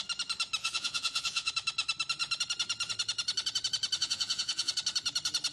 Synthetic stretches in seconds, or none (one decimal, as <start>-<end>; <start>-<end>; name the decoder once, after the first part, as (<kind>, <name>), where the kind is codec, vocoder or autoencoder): 0.6-1.5 (vocoder, Vocos); 4.0-4.7